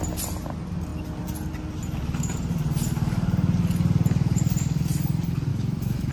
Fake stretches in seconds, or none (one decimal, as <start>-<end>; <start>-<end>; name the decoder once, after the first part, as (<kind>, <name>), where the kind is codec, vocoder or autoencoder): 5.5-6.1 (autoencoder, DAC-VAE)